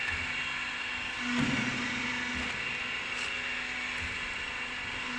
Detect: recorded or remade recorded